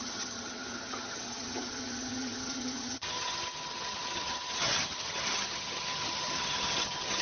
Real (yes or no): no